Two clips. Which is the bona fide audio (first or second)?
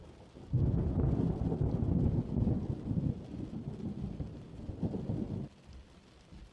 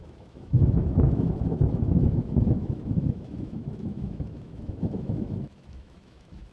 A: first